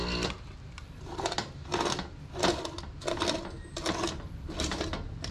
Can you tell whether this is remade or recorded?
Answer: recorded